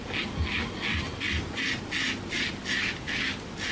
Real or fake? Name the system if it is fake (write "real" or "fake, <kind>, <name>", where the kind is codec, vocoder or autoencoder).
real